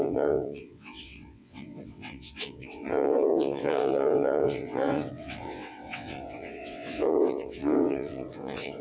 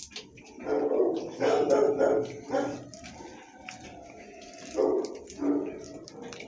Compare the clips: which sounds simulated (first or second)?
first